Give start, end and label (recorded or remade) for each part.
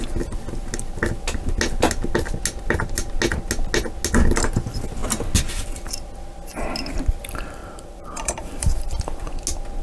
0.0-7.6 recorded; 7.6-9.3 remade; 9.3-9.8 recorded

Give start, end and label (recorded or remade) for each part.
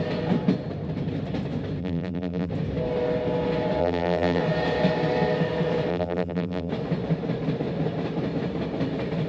0.0-1.8 recorded; 1.8-2.5 remade; 2.5-3.8 recorded; 3.8-4.4 remade; 4.4-5.9 recorded; 5.9-6.7 remade; 6.7-9.3 recorded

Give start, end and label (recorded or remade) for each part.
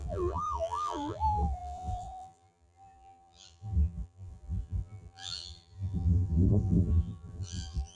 0.0-7.9 remade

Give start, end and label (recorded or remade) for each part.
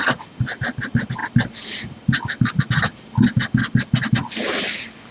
0.0-1.2 recorded; 1.2-2.6 remade; 2.6-5.1 recorded